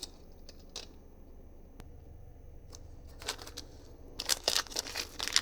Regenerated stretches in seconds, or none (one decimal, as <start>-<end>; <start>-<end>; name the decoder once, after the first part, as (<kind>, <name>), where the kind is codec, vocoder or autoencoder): 4.3-4.8 (codec, DAC)